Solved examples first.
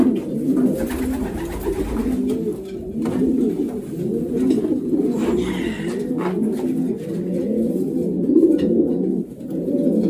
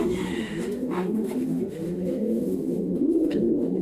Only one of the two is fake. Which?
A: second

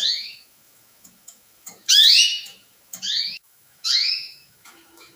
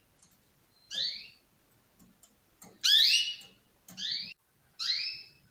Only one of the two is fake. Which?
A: first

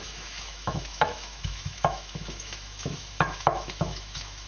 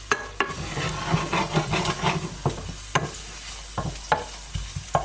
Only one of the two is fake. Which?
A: first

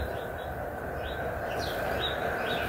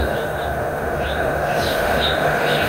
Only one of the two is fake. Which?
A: second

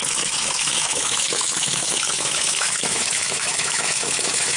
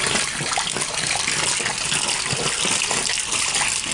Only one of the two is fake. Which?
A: first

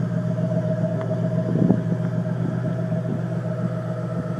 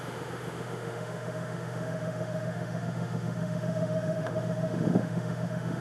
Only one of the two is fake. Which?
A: second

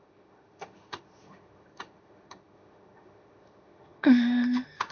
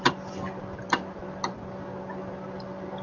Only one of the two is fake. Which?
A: first